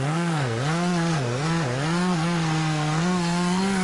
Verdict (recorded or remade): remade